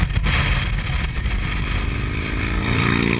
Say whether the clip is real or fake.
real